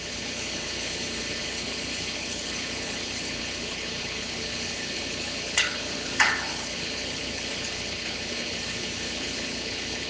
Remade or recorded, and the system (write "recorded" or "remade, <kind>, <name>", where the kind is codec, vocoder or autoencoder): remade, codec, HILCodec